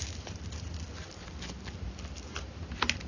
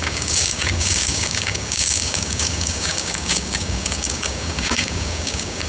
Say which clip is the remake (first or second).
second